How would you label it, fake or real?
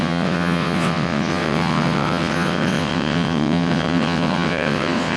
fake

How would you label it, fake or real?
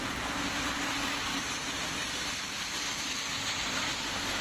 real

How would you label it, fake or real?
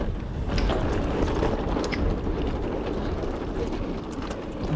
real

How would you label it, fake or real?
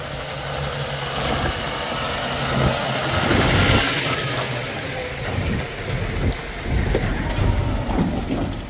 real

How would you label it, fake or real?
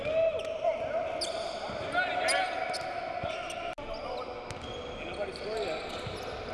real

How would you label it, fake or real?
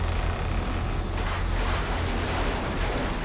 real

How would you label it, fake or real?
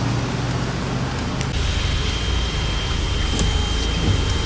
real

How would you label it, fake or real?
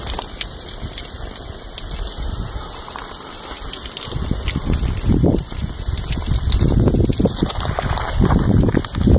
real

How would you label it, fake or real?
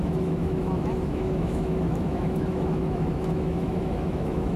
fake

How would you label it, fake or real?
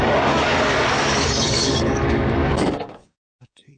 fake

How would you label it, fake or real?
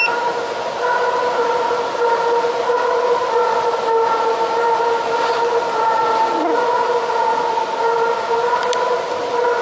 real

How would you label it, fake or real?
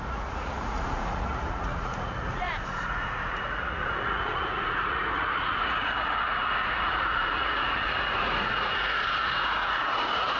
fake